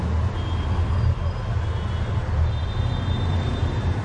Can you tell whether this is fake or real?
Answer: real